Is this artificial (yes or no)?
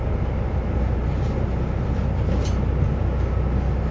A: no